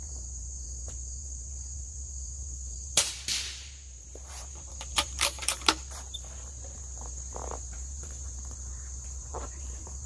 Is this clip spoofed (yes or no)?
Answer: yes